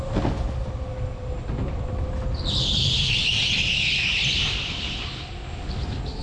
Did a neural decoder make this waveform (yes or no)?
no